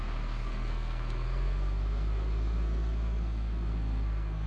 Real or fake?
fake